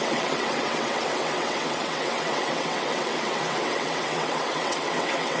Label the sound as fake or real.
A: fake